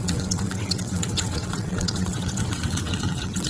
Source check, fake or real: fake